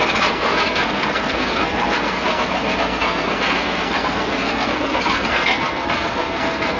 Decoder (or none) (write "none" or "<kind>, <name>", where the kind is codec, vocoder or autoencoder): codec, SNAC